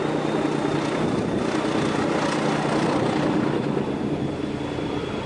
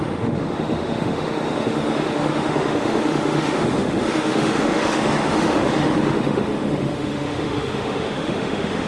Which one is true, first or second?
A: first